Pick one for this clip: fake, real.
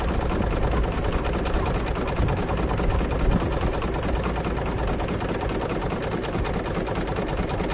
real